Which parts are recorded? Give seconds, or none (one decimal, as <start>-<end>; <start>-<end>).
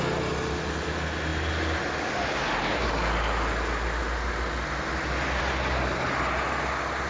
0.0-7.1